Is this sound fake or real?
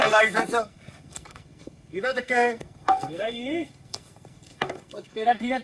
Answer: fake